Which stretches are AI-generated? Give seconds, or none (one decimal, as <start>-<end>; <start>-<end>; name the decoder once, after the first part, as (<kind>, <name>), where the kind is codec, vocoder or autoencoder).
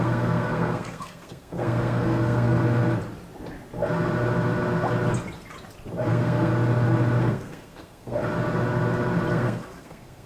0.0-2.6 (codec, SNAC); 6.1-6.5; 7.2-8.2; 9.3-10.3